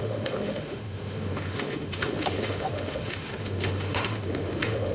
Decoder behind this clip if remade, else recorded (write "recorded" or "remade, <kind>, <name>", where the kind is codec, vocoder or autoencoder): remade, autoencoder, DAC-VAE